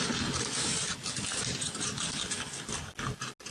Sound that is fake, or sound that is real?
real